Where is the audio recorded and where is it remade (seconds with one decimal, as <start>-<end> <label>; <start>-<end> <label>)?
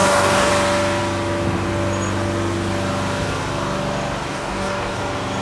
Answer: 0.0-0.5 remade; 0.5-4.3 recorded; 4.3-5.0 remade; 5.0-5.4 recorded